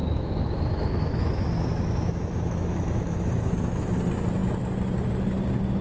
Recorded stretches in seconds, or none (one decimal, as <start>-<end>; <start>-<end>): 3.5-5.8